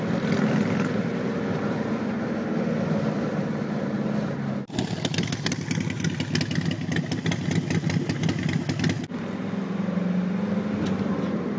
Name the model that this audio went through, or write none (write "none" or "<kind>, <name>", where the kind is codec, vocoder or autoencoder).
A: none